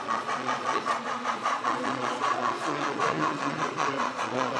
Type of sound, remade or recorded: remade